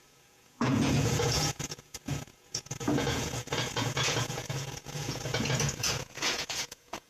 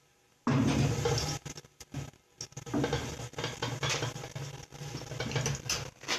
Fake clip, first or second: first